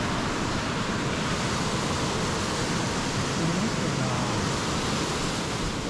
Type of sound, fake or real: real